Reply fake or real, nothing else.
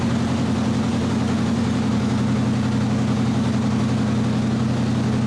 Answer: real